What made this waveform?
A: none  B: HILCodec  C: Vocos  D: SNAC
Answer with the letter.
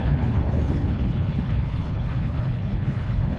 B